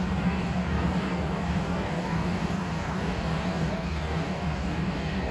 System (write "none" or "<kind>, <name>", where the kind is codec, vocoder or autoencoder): codec, DAC